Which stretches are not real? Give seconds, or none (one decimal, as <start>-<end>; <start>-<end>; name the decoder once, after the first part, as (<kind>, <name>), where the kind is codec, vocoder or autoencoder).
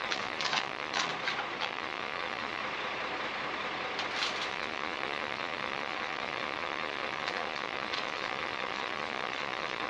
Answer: 0.0-1.1 (vocoder, Vocos); 1.6-2.6; 4.5-9.9